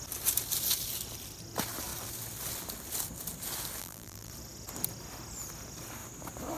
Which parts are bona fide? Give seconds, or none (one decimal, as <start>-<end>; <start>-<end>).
0.0-3.8; 4.3-6.6